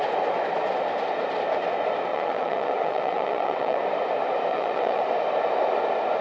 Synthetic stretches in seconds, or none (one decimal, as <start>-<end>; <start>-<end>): 2.1-3.8; 4.5-5.0